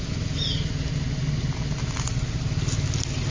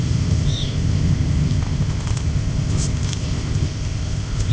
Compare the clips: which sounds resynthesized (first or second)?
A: second